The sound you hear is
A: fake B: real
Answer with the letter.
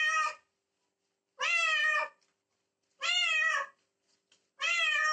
B